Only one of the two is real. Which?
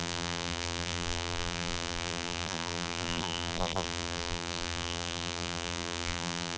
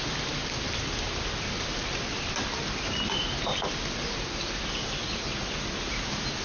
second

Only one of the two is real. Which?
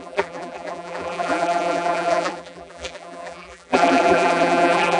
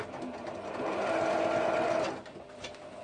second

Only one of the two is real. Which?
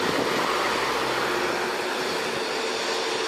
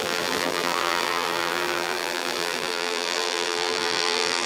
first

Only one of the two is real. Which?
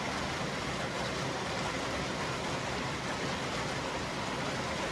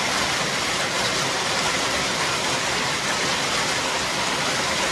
first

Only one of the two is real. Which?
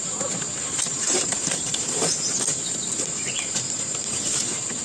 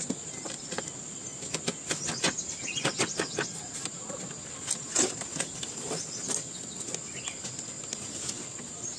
second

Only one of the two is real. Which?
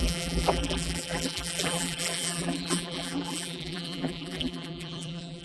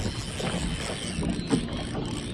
second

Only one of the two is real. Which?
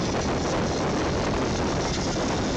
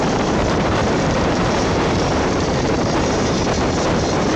first